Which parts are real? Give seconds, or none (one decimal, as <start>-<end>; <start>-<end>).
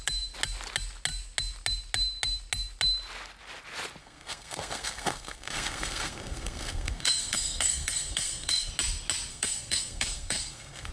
0.0-4.0; 8.7-9.3